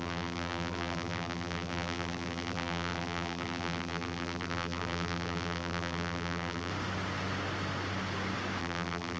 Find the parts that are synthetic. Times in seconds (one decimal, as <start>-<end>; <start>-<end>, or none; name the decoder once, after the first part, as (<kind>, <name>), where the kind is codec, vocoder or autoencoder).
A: 0.0-6.7 (vocoder, BigVGAN v2); 8.6-9.2